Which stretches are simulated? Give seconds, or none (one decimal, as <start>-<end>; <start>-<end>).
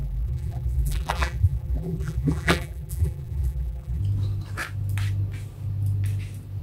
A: 0.0-4.0